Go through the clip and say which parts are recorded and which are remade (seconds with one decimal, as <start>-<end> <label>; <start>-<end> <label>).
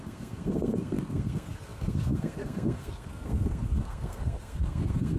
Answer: 0.0-5.2 remade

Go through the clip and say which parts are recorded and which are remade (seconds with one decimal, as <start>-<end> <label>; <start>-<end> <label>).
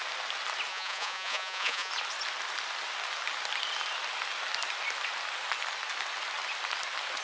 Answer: 0.0-0.7 recorded; 0.7-1.9 remade; 1.9-7.2 recorded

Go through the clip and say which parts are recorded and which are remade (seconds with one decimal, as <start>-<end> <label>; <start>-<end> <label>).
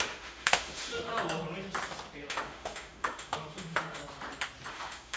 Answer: 0.0-1.1 remade; 1.1-2.3 recorded; 2.3-4.0 remade; 4.0-4.7 recorded; 4.7-5.2 remade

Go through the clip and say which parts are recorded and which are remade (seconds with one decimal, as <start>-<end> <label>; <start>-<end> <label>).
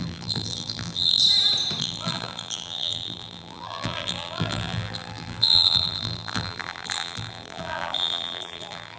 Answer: 0.0-1.2 remade; 1.2-1.8 recorded; 1.8-9.0 remade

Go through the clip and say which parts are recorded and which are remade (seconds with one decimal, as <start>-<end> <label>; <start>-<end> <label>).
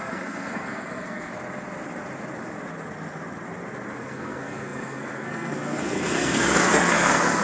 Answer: 0.0-1.3 remade; 1.3-4.0 recorded; 4.0-7.4 remade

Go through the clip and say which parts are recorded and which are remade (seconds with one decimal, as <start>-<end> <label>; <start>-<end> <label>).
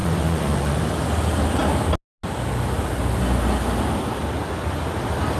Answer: 0.0-0.8 remade; 0.8-5.4 recorded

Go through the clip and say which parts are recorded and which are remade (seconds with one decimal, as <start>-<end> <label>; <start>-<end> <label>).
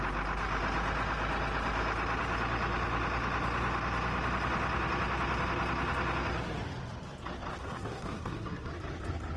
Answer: 0.0-7.6 recorded; 7.6-8.7 remade; 8.7-9.4 recorded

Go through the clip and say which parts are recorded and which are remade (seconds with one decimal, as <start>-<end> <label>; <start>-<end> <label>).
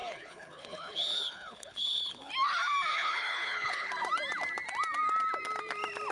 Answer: 0.0-2.3 remade; 2.3-2.9 recorded; 2.9-3.9 remade; 3.9-6.1 recorded